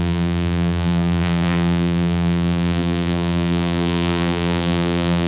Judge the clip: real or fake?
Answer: fake